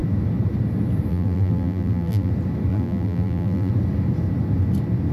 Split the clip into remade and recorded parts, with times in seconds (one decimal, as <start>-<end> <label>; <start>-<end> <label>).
0.0-1.1 recorded; 1.1-2.3 remade; 2.3-2.7 recorded; 2.7-3.7 remade; 3.7-5.1 recorded